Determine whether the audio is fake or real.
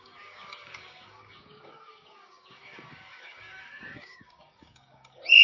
fake